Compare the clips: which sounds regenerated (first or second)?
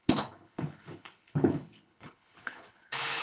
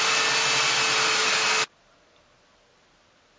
first